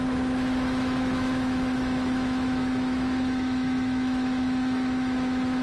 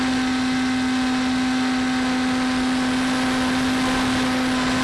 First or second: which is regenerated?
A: first